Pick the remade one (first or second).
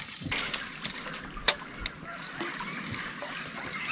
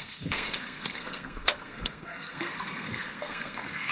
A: second